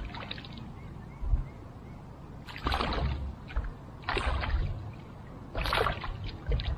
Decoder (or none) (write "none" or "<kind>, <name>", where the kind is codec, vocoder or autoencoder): none